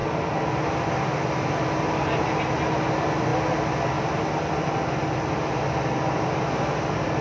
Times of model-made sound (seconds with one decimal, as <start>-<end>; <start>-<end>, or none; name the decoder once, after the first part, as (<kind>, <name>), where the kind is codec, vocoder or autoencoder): none